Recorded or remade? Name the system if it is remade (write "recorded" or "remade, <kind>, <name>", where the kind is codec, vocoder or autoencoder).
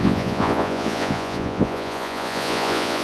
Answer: remade, vocoder, Vocos